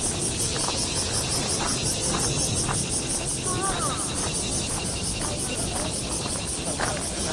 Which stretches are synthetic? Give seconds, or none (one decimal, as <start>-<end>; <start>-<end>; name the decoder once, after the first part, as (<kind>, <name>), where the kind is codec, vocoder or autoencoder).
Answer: none